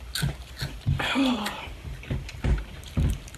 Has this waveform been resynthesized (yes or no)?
no